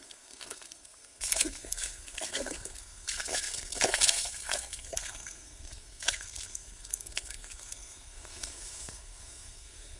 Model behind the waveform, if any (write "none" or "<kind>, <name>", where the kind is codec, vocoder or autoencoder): codec, SNAC